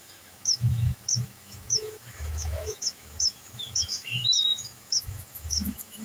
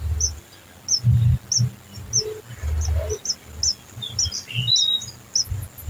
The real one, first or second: second